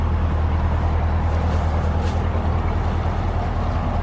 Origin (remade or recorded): recorded